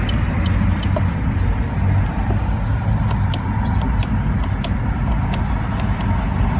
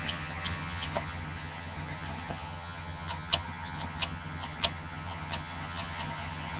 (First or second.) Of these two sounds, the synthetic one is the second